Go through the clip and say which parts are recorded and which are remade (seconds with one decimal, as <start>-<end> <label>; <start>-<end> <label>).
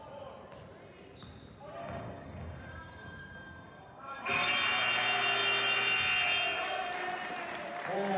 0.0-1.8 recorded; 1.8-4.5 remade; 4.5-8.2 recorded